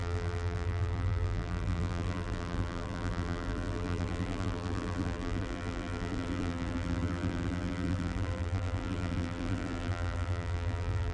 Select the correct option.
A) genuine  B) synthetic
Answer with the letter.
B